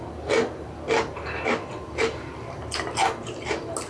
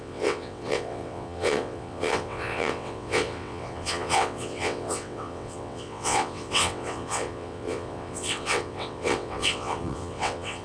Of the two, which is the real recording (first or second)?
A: first